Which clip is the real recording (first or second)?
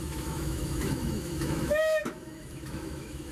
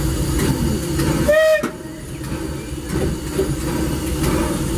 second